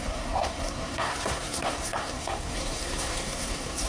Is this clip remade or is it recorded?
remade